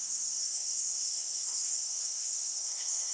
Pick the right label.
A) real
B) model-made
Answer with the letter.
B